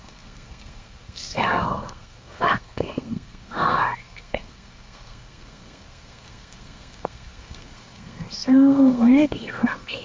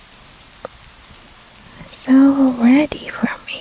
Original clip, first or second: second